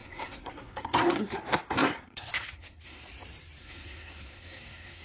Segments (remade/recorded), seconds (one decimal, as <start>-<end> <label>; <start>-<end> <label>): 0.0-3.0 remade; 3.0-3.6 recorded; 3.6-5.0 remade